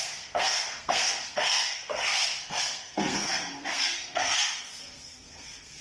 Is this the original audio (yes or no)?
no